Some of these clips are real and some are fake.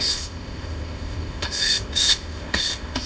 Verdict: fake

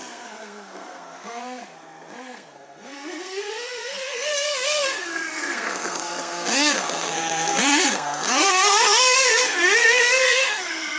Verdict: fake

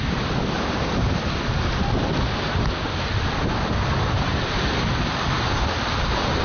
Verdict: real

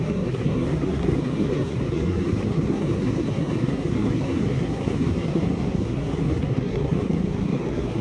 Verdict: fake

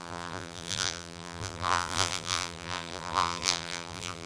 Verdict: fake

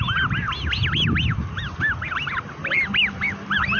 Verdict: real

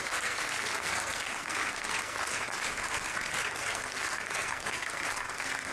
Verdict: fake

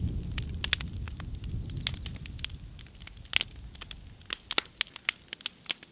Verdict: real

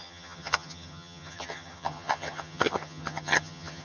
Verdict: fake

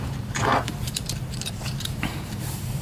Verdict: fake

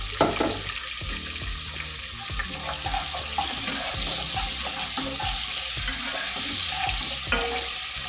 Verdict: real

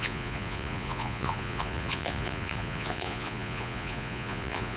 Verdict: fake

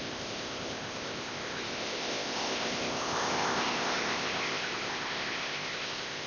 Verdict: fake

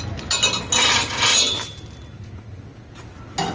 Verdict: real